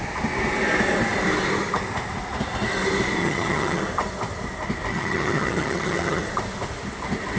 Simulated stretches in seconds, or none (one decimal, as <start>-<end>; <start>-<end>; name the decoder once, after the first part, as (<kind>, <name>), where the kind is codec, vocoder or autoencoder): 3.2-3.8 (vocoder, HiFi-GAN); 4.9-6.2

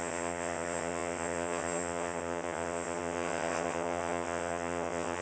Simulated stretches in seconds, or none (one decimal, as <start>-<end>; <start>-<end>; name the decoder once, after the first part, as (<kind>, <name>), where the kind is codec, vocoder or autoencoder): 0.0-5.2 (vocoder, HiFi-GAN)

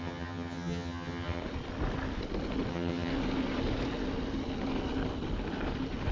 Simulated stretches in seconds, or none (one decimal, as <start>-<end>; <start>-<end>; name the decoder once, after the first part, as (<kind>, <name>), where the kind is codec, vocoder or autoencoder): 0.0-1.4 (vocoder, HiFi-GAN); 2.7-3.1